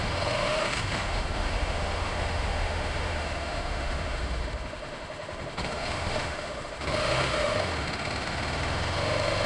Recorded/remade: remade